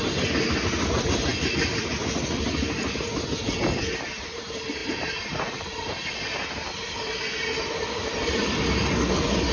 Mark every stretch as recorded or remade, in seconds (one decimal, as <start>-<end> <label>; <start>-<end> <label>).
0.0-8.2 recorded; 8.2-8.8 remade; 8.8-9.5 recorded